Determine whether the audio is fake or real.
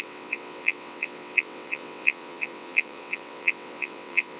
fake